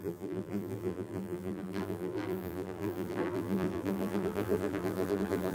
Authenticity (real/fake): fake